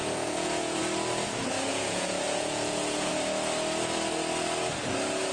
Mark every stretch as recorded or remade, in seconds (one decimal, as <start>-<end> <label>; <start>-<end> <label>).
0.0-0.8 remade; 0.8-1.7 recorded; 1.7-3.1 remade; 3.1-5.3 recorded